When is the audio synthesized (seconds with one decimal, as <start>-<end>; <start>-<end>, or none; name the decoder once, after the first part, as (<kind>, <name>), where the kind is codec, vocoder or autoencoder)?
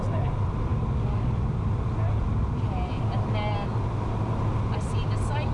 none